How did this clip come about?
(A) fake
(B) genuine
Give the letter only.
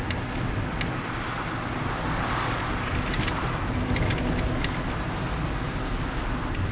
B